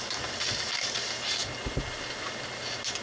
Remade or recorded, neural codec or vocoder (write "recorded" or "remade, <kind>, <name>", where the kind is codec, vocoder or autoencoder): recorded